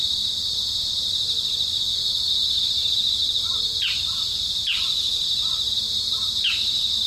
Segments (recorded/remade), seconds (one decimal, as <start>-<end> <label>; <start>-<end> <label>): 0.0-7.1 recorded